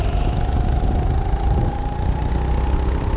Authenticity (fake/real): real